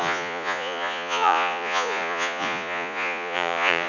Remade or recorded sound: remade